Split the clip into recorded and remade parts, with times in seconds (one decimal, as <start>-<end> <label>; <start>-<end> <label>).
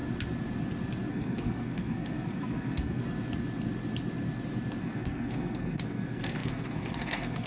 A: 0.0-1.1 recorded; 1.1-3.0 remade; 3.0-4.8 recorded; 4.8-7.5 remade